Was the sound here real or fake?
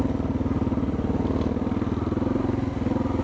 real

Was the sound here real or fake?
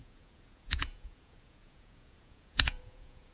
fake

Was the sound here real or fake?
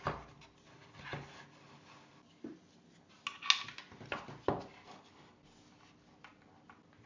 real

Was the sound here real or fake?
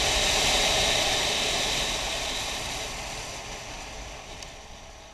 real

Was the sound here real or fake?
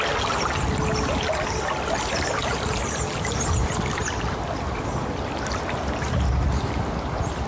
real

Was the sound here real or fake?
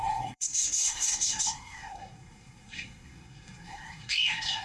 fake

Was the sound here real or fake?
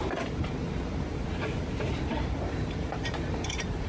fake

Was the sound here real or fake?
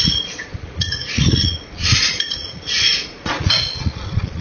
fake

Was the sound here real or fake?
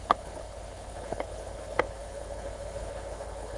fake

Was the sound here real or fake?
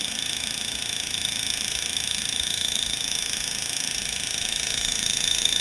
fake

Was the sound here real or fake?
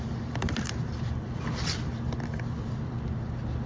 fake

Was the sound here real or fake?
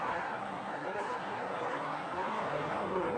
fake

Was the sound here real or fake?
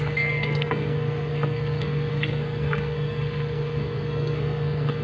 fake